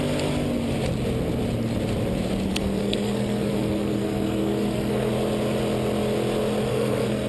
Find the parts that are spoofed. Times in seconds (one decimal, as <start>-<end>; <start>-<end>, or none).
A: 2.5-5.1; 6.7-7.3